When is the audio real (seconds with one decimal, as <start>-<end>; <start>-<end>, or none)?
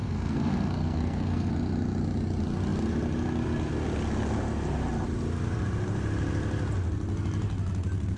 1.5-8.2